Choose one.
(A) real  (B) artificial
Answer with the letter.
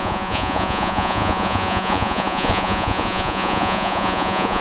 B